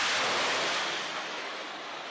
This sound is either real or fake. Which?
real